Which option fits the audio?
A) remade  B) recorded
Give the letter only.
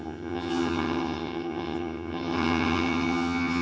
A